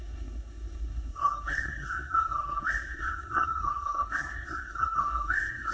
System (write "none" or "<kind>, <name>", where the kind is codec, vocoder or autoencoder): codec, SNAC